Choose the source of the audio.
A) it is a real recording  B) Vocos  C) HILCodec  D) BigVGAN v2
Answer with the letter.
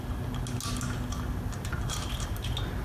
A